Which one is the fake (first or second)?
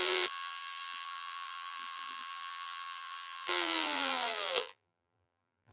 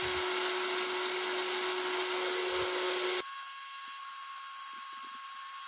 first